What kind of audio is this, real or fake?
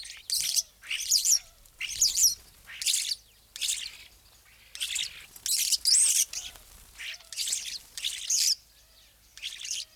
real